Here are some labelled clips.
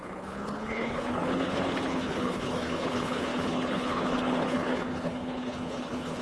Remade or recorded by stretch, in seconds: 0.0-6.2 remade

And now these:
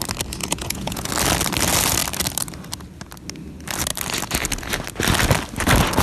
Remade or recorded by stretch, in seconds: 0.0-0.4 recorded; 0.4-1.1 remade; 1.1-6.0 recorded